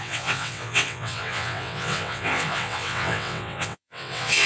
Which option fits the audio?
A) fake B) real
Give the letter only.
A